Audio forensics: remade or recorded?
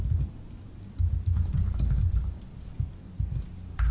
recorded